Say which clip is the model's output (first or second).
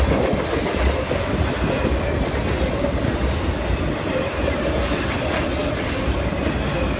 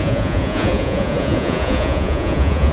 second